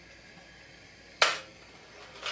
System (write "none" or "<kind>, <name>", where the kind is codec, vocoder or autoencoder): none